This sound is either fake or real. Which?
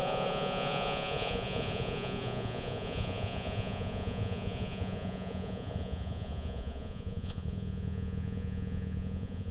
fake